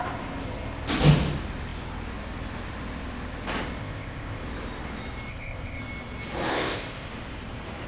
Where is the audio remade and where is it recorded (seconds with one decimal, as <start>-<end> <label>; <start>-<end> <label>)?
0.0-3.8 recorded; 3.8-4.4 remade; 4.4-5.3 recorded; 5.3-5.8 remade; 5.8-6.5 recorded; 6.5-7.1 remade; 7.1-7.9 recorded